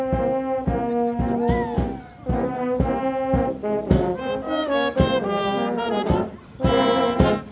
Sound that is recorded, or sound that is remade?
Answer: recorded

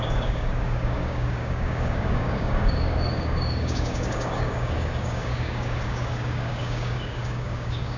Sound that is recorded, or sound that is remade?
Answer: remade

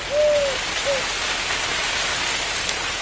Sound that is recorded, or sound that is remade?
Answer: recorded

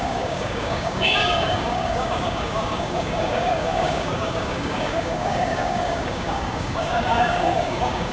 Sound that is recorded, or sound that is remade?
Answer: remade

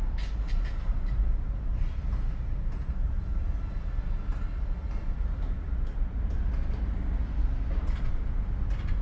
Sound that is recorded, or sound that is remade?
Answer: recorded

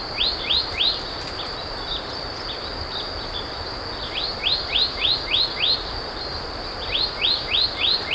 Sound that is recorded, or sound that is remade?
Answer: recorded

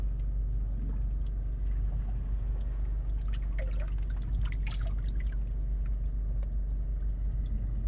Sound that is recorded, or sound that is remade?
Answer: recorded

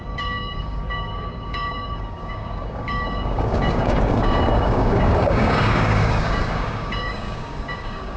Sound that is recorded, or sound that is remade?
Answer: remade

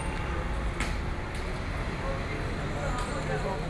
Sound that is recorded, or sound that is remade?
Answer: recorded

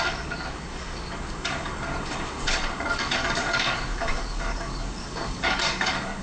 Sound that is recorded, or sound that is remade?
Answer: remade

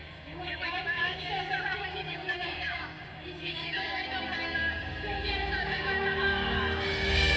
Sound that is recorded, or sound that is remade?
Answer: remade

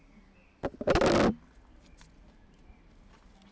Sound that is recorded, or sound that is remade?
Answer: recorded